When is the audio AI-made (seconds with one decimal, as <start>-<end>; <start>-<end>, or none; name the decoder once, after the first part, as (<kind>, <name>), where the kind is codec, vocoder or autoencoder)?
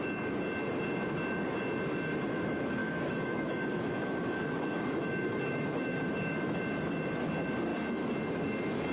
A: 2.8-6.6 (autoencoder, DAC-VAE)